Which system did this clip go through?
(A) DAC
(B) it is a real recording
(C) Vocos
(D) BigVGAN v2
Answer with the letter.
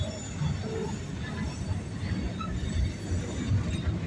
B